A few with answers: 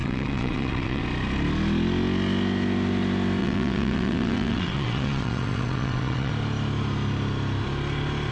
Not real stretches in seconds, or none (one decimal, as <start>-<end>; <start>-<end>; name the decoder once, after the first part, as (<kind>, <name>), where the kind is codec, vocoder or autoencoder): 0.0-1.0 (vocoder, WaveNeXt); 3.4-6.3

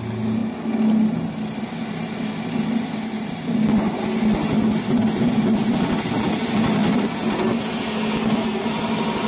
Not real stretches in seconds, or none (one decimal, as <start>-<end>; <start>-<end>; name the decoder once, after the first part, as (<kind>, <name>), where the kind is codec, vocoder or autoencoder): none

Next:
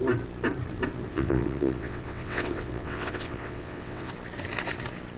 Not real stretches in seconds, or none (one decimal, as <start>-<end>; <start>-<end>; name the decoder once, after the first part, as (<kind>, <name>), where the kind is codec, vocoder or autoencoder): 1.1-4.1 (vocoder, WaveNeXt)